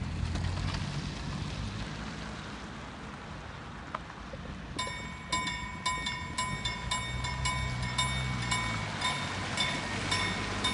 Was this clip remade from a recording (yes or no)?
no